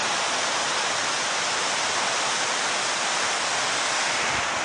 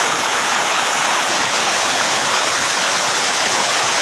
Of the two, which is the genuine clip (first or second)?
first